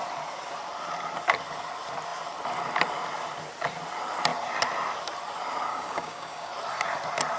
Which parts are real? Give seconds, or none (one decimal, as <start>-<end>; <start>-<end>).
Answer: 0.0-5.7; 6.5-7.4